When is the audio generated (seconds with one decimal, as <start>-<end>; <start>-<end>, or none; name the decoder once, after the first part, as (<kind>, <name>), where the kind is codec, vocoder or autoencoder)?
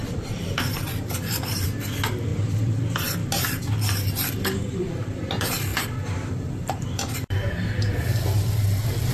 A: 0.0-3.2 (vocoder, BigVGAN v2); 4.1-9.1